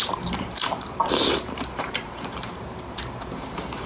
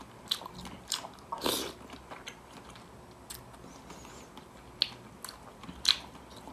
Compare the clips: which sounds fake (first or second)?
first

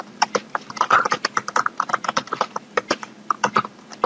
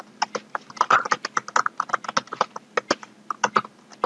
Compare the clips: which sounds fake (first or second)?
first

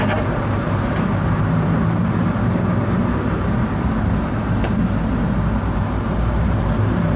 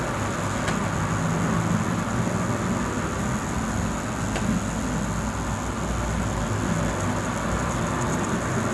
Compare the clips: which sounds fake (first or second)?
first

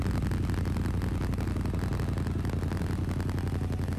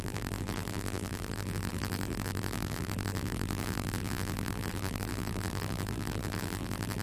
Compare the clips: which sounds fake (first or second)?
second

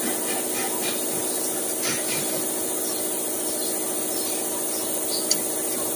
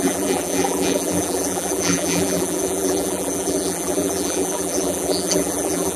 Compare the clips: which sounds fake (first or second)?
second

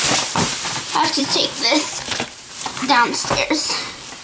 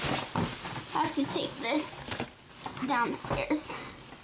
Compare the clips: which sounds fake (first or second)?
first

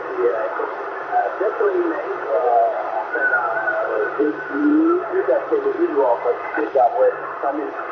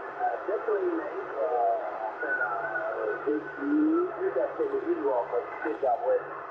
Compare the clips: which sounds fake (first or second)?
first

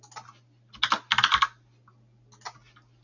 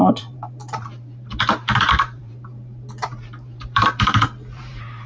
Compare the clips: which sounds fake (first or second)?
second